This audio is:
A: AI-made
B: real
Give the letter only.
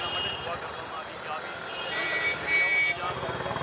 B